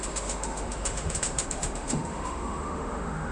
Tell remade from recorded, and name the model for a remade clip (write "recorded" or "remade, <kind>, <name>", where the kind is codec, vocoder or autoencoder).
remade, autoencoder, DAC-VAE